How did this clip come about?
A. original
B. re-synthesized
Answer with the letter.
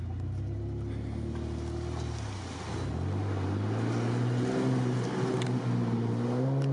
A